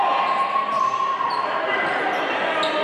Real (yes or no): yes